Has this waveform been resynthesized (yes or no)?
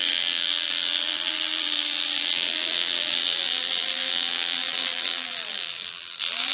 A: yes